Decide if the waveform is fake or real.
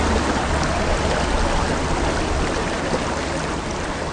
real